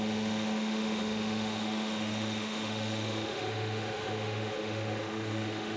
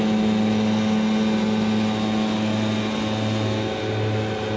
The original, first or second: second